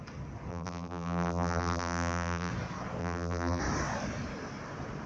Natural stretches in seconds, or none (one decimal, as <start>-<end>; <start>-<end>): 0.0-0.5; 2.5-3.0; 3.6-5.1